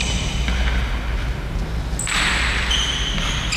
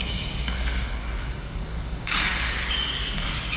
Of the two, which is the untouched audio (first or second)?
first